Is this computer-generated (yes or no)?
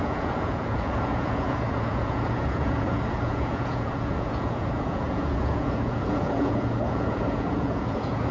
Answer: yes